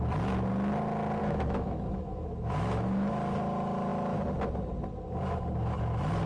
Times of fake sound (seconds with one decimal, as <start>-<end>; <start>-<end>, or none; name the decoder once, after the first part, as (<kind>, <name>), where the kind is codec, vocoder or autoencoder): 1.2-3.1 (autoencoder, DAC-VAE)